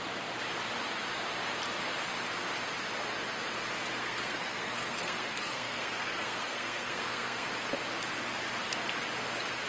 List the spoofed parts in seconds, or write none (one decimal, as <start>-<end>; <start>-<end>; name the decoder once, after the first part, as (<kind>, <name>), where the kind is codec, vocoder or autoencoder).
4.0-7.5 (codec, SNAC)